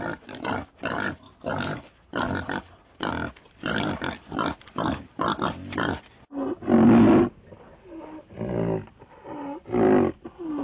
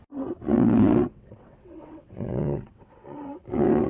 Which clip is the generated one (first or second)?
second